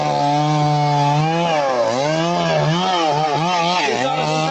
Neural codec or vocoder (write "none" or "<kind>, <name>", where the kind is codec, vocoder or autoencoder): none